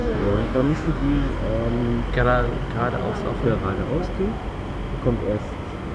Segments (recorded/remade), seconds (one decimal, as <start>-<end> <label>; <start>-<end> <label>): 0.0-1.3 remade; 1.3-5.9 recorded